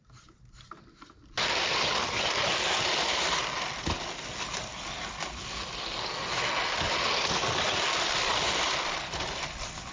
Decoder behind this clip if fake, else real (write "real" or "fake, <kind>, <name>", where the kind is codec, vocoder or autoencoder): real